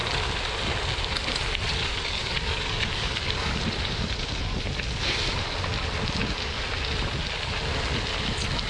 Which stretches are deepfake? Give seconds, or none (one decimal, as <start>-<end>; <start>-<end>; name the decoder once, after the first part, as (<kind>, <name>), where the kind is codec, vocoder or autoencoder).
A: 1.8-3.6 (codec, DAC)